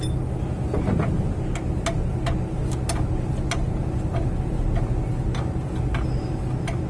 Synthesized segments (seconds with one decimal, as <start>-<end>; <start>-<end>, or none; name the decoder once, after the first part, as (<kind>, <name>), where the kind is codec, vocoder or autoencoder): none